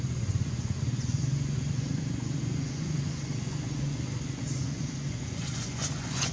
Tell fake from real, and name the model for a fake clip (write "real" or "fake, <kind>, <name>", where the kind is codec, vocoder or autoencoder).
fake, vocoder, Vocos